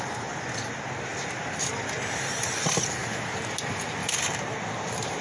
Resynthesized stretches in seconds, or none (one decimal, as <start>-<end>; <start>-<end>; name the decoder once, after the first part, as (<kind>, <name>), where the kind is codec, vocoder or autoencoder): 3.0-3.5 (vocoder, BigVGAN v2); 4.0-5.2